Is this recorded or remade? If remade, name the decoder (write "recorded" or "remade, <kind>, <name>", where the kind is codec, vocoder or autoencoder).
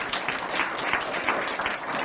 recorded